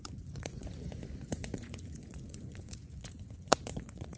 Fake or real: fake